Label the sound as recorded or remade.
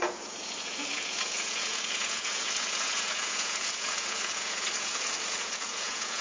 remade